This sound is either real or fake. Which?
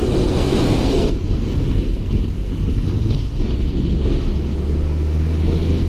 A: fake